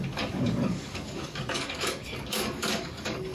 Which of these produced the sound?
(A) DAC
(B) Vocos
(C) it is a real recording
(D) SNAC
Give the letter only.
A